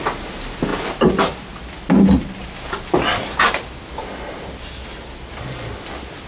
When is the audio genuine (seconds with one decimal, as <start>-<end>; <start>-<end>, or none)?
0.0-6.3